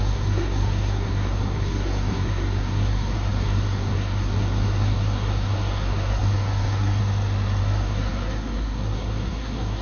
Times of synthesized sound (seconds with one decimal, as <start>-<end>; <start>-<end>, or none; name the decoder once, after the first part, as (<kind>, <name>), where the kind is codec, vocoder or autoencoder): 0.0-7.0 (codec, SNAC); 7.6-9.8